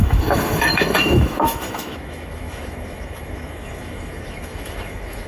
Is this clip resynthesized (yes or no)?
yes